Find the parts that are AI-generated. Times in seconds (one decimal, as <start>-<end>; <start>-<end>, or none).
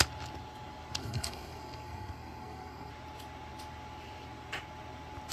1.0-2.9